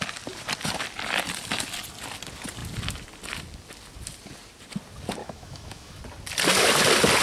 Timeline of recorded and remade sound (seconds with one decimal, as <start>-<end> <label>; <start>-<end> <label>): 0.0-5.2 recorded; 5.2-6.0 remade; 6.0-7.2 recorded